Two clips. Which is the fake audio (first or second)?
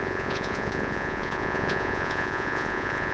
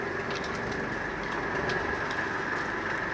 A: first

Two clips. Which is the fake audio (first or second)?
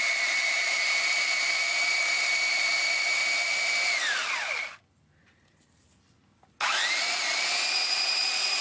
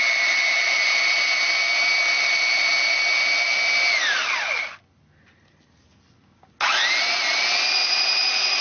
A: first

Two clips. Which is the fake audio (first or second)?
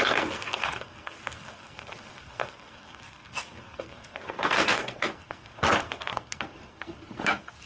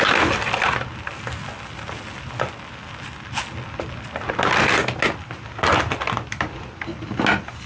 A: first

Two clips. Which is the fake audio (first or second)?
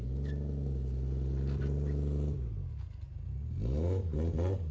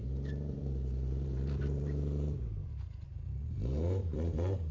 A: second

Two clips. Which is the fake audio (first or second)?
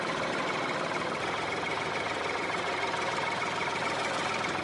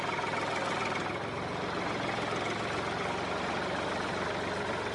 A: first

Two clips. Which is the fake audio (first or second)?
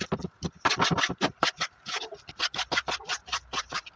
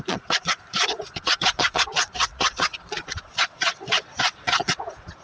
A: second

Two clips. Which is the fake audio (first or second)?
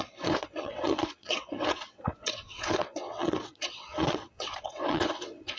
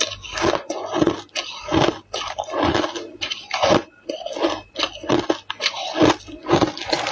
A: first